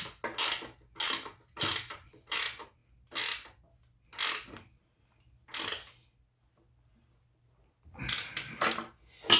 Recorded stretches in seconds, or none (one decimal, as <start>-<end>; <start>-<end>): 0.0-9.4